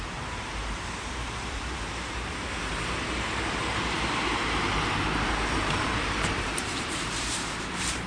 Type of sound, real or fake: fake